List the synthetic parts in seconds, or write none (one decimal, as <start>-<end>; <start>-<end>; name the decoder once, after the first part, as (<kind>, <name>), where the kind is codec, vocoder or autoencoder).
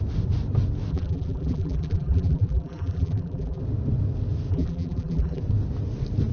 0.9-3.6 (vocoder, BigVGAN v2); 4.5-5.4